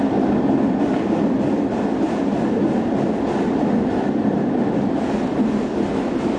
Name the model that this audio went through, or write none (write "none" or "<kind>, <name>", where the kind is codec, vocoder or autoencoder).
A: none